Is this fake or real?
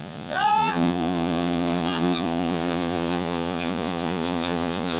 fake